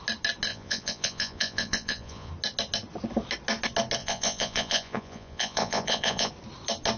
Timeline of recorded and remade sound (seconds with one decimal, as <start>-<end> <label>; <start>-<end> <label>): 0.0-0.5 recorded; 0.5-2.3 remade; 2.3-4.0 recorded; 4.0-6.3 remade; 6.3-7.0 recorded